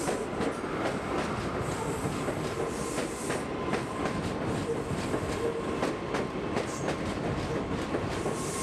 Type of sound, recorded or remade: recorded